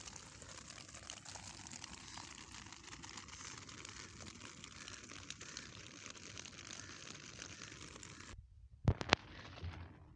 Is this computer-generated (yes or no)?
yes